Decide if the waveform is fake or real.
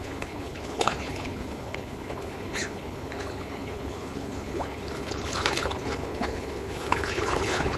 fake